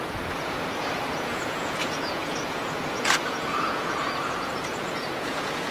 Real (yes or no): no